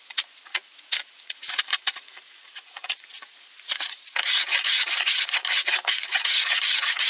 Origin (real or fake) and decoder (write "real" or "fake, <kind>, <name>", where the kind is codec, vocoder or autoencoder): fake, vocoder, Vocos